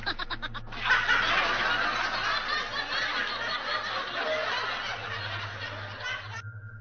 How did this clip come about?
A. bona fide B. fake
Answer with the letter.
A